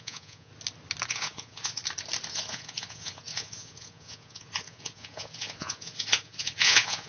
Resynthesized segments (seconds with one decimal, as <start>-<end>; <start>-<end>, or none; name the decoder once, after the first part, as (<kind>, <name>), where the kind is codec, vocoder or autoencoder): 0.0-0.5 (vocoder, Vocos); 1.1-1.8; 2.3-7.1